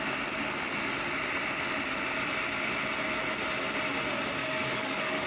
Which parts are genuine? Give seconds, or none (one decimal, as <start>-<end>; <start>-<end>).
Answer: 0.0-4.4